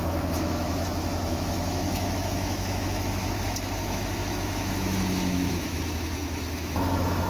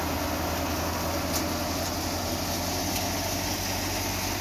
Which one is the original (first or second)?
second